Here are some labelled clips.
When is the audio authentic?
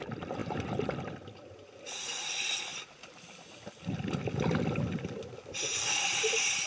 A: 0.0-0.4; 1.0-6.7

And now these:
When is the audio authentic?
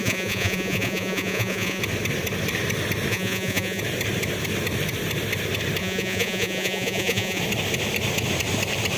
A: 1.8-3.1; 3.8-5.8; 7.4-9.0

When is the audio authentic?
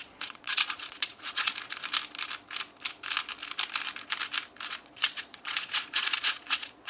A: 1.5-4.7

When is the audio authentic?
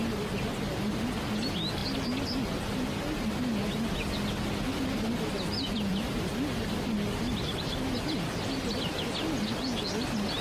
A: 0.0-10.4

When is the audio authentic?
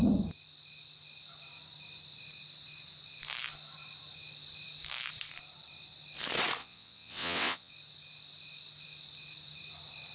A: 0.0-6.6; 7.7-10.1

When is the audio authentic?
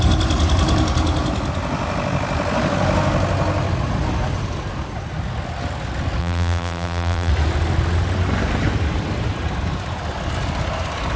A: 0.0-6.2; 7.3-11.2